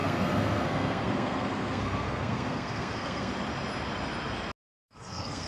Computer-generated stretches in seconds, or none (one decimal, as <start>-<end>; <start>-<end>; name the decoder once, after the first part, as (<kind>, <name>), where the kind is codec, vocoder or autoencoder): 0.0-3.3 (codec, SNAC); 4.8-5.5